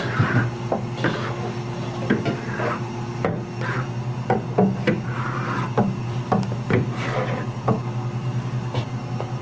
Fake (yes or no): no